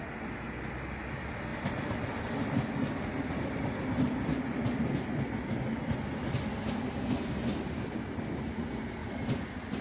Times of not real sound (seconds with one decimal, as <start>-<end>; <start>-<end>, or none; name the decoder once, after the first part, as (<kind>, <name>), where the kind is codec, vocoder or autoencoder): none